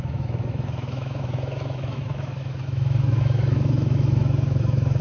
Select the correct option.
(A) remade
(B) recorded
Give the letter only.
A